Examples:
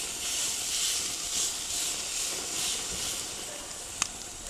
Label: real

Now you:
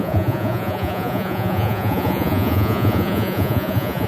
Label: fake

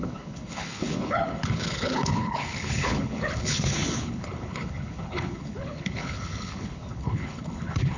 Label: fake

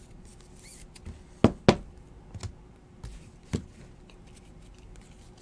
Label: real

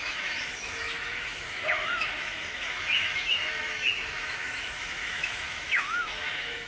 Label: fake